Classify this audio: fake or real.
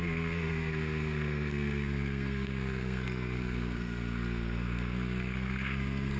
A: fake